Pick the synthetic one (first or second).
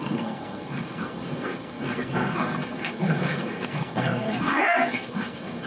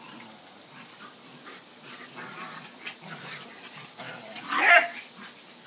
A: first